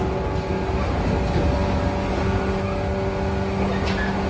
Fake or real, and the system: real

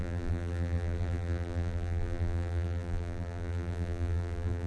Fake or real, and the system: fake, vocoder, BigVGAN v2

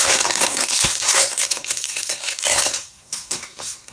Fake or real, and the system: fake, codec, SNAC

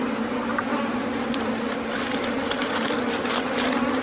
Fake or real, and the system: real